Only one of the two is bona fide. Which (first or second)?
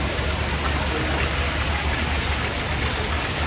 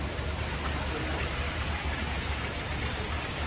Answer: first